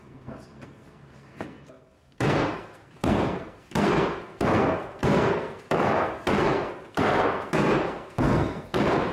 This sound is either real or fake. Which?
fake